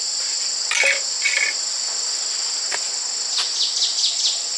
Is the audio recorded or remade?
recorded